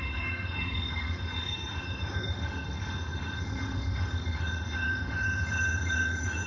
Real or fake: fake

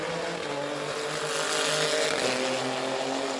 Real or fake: real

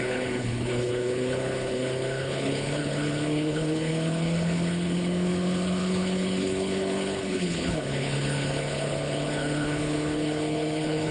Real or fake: fake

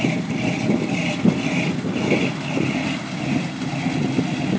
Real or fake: real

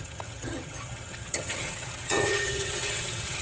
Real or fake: fake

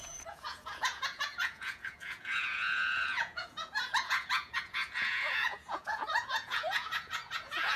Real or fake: fake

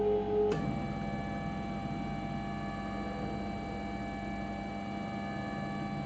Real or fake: real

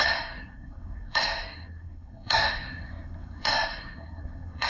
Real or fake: fake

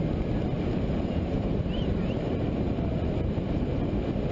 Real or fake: real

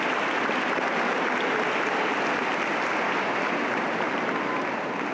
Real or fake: real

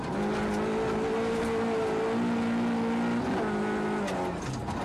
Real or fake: real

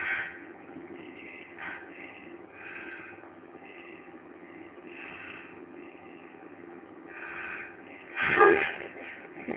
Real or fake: fake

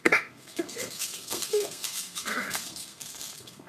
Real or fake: fake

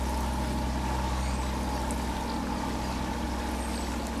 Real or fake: real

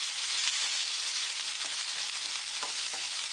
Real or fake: fake